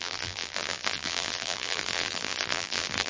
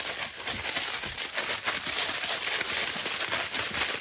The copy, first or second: first